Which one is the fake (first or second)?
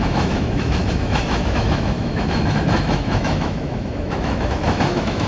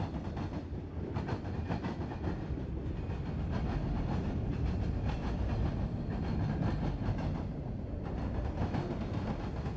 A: first